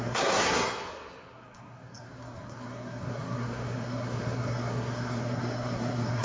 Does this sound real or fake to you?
fake